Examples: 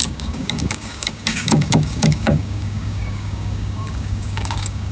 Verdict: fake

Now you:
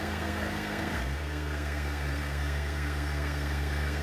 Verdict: fake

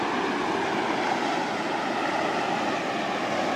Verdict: real